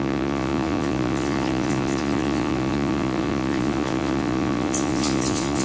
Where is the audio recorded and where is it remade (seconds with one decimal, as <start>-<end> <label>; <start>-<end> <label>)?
0.0-5.6 remade